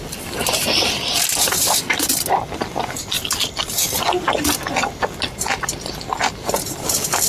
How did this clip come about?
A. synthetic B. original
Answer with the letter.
B